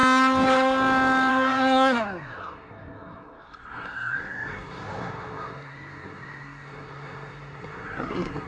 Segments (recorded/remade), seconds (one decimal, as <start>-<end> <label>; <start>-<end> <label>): 0.0-1.3 recorded; 1.3-8.5 remade